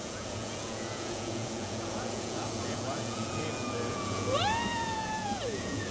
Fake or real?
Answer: fake